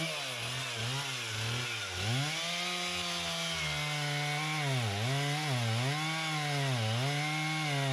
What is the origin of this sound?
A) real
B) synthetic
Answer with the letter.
A